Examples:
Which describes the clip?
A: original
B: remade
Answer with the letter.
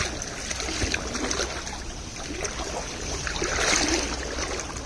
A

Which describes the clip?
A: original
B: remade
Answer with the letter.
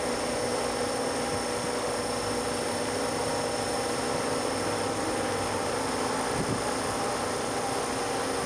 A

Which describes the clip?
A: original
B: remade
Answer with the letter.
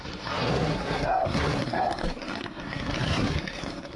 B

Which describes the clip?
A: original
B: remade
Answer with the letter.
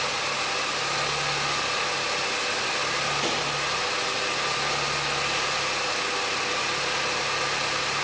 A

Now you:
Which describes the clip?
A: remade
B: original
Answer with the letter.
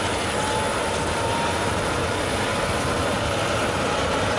B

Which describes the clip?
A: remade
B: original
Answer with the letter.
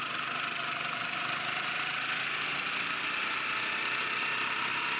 B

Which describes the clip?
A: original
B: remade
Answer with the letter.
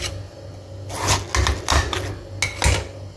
A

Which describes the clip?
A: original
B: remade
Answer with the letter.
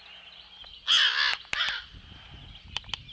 A